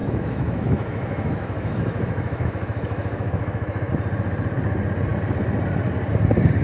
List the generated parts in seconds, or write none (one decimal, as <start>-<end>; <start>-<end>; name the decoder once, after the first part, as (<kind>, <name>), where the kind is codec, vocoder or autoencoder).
0.0-3.9 (autoencoder, DAC-VAE)